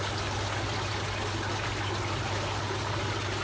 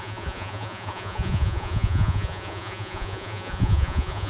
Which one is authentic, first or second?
first